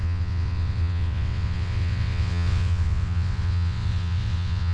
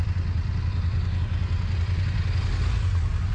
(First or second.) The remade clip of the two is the first